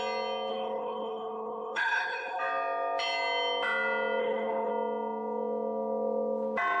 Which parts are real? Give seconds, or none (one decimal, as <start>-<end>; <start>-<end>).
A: 0.0-0.5; 2.4-4.2; 4.7-6.8